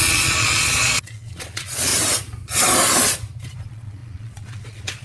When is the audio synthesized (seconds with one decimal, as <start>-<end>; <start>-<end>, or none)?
0.0-1.9; 3.6-5.0